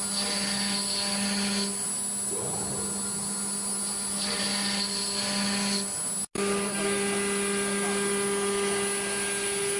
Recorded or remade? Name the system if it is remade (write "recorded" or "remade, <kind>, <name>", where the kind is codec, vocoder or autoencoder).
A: recorded